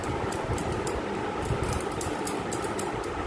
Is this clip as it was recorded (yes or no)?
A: no